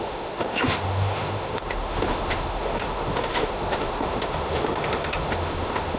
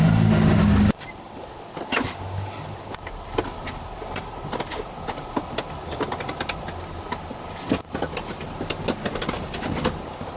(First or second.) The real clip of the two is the second